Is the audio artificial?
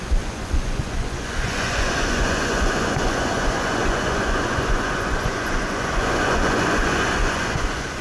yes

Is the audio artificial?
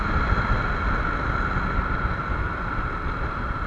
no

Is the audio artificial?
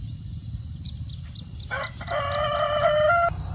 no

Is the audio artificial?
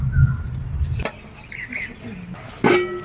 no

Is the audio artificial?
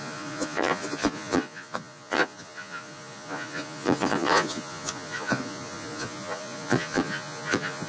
yes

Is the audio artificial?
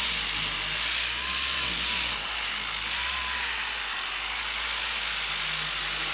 no